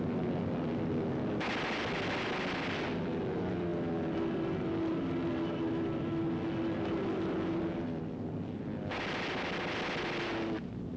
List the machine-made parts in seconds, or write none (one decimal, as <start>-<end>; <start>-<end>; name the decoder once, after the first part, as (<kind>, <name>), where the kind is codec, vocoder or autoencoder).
none